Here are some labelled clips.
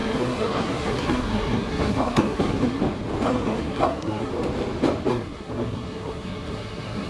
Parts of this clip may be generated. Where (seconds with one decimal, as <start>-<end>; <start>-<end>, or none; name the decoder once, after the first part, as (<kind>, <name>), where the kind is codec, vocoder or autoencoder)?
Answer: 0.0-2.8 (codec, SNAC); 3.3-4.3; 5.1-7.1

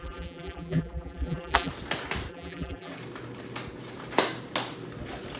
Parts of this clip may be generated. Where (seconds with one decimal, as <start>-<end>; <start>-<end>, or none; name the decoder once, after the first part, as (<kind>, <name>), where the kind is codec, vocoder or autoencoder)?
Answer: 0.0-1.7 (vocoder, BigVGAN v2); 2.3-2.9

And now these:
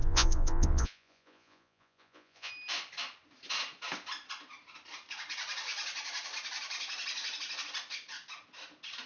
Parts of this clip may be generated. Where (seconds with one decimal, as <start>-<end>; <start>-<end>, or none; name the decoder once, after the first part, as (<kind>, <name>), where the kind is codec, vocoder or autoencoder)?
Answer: 0.0-2.5 (vocoder, Vocos)